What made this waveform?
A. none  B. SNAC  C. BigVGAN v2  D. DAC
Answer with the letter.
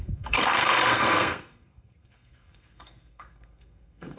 B